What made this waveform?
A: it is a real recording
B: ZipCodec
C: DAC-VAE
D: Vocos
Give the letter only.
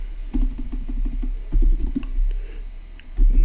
A